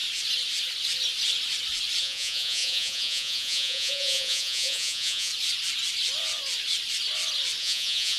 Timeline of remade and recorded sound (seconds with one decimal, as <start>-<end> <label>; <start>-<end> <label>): 0.0-2.0 recorded; 2.0-5.3 remade; 5.3-7.6 recorded; 7.6-8.2 remade